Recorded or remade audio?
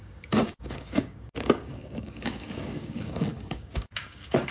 remade